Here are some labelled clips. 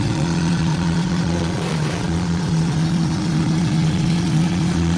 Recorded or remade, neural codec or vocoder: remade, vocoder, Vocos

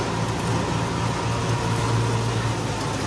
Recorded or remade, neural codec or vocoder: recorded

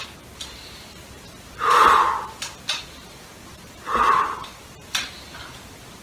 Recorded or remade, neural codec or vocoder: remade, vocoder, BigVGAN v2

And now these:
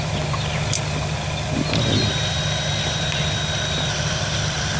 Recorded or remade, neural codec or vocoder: recorded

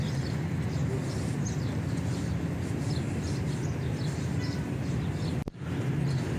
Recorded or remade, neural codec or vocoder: recorded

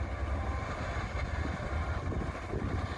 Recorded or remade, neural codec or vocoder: recorded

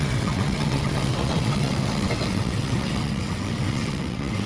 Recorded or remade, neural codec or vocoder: remade, vocoder, WaveNeXt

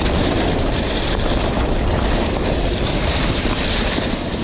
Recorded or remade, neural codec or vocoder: remade, vocoder, BigVGAN v2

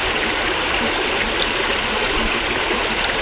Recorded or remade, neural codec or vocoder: remade, vocoder, BigVGAN v2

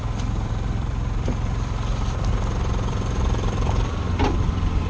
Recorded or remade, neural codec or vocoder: remade, vocoder, BigVGAN v2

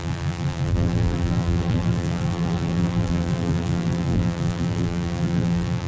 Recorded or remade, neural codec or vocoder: remade, vocoder, BigVGAN v2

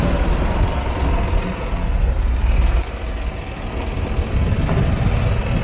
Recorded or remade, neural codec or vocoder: recorded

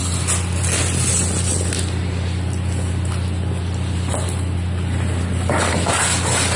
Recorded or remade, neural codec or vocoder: recorded